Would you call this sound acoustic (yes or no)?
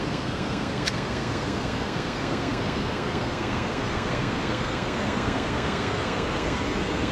no